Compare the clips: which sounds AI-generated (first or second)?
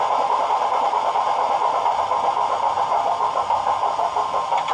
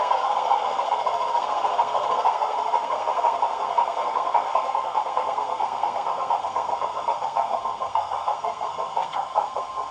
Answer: second